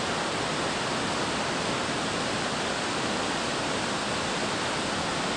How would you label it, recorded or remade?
recorded